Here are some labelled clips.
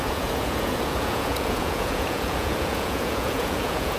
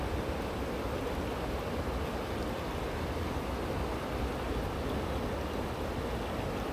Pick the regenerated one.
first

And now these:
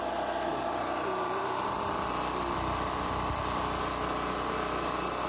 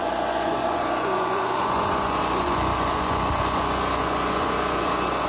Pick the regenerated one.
second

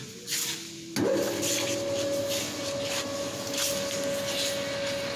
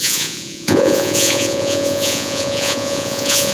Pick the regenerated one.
second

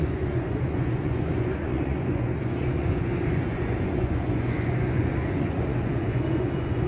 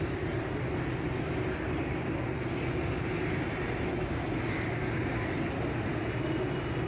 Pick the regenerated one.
first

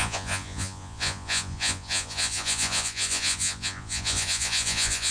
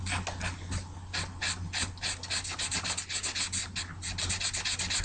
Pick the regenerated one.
first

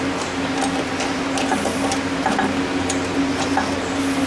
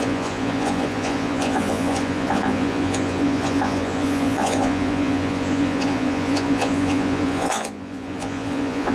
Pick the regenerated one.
second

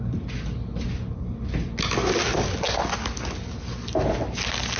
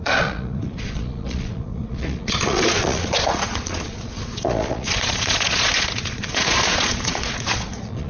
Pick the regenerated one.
second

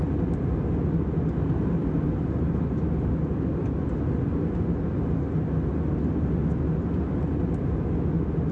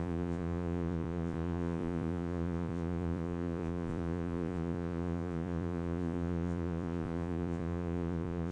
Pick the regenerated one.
second